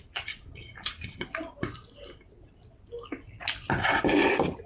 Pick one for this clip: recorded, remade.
recorded